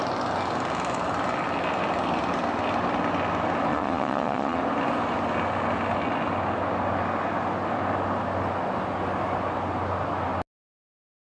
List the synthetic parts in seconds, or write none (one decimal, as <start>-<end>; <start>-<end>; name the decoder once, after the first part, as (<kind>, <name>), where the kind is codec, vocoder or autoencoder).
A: 3.7-4.6 (vocoder, Vocos)